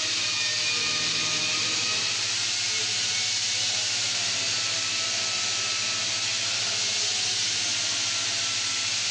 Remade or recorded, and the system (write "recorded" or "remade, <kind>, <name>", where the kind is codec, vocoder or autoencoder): recorded